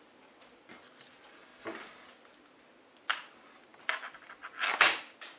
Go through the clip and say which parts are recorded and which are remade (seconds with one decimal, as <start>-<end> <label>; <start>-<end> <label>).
0.0-5.4 recorded